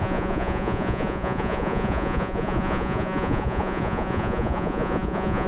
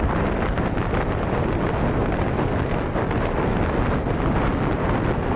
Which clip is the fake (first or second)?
first